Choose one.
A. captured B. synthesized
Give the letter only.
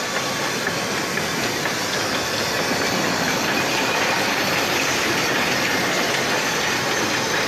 A